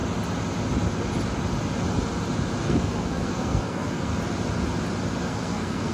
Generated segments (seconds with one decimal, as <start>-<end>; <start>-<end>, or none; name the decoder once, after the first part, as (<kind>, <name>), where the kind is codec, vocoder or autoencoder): 2.6-4.1 (codec, SNAC); 5.2-5.9